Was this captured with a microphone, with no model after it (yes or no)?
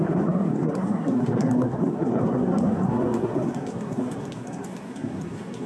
no